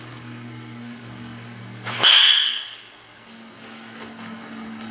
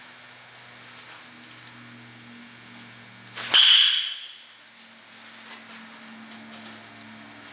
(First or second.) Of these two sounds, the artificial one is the first